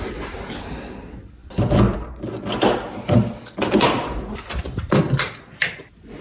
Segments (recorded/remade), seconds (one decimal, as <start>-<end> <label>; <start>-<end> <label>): 0.0-6.2 recorded